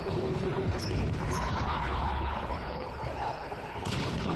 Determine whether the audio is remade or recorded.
remade